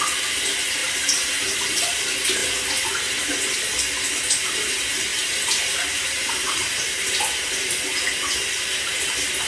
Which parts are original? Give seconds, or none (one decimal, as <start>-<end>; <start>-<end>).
0.0-0.8; 2.0-2.4; 3.3-5.1; 8.1-9.5